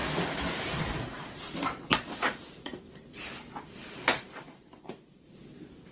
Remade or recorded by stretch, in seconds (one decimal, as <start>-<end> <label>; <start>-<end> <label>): 0.0-1.4 remade; 1.4-1.9 recorded; 1.9-5.4 remade; 5.4-5.9 recorded